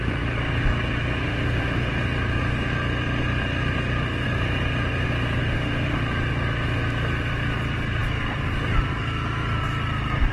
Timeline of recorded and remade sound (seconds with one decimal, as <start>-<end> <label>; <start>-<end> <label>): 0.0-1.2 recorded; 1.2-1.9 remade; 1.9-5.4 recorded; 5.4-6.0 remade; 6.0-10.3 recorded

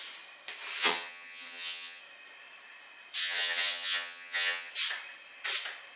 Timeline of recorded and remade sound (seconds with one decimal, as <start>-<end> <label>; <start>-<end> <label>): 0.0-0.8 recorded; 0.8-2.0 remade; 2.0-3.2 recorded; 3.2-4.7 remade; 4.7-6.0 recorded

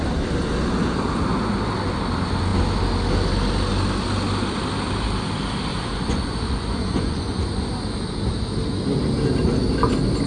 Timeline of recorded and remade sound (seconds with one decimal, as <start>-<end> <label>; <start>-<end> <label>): 0.0-5.7 recorded; 5.7-7.4 remade; 7.4-10.3 recorded

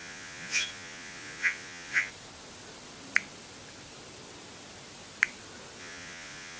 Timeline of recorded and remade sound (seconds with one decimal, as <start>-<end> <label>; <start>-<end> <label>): 0.0-2.1 remade; 2.1-5.8 recorded; 5.8-6.6 remade